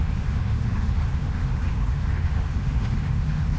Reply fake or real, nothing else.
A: fake